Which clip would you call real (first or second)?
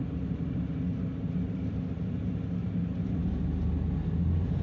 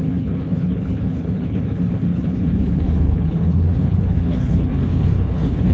first